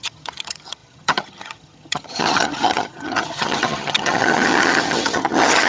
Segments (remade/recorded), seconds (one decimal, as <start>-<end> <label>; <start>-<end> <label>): 0.0-5.7 remade